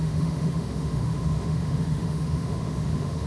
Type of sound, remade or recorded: remade